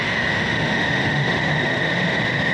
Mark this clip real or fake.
fake